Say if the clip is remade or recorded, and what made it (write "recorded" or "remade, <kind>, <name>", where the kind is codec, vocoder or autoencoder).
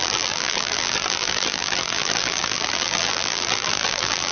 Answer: remade, vocoder, BigVGAN v2